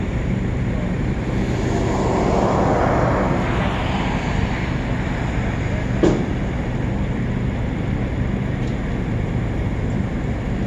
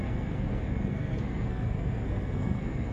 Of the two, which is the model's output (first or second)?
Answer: second